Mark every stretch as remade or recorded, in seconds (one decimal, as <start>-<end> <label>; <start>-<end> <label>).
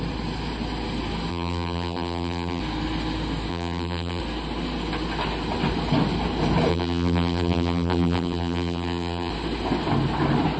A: 0.0-1.3 recorded; 1.3-2.6 remade; 2.6-3.5 recorded; 3.5-4.2 remade; 4.2-6.7 recorded; 6.7-9.3 remade; 9.3-10.6 recorded